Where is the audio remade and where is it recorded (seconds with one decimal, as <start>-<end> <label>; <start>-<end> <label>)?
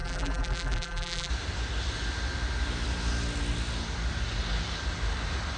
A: 0.0-1.3 remade; 1.3-5.6 recorded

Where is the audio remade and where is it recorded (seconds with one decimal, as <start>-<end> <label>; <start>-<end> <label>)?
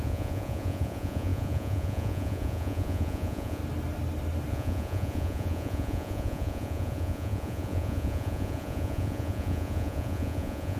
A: 0.0-3.6 remade; 3.6-4.5 recorded; 4.5-10.8 remade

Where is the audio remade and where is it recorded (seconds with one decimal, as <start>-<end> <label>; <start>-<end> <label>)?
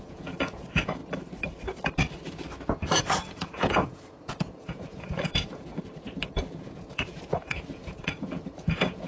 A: 0.0-1.0 remade; 1.0-3.0 recorded; 3.0-5.7 remade; 5.7-6.3 recorded; 6.3-9.1 remade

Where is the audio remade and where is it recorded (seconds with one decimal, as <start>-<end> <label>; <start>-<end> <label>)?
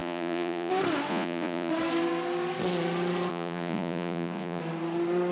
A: 0.0-0.7 remade; 0.7-1.1 recorded; 1.1-1.7 remade; 1.7-3.3 recorded; 3.3-4.6 remade; 4.6-5.3 recorded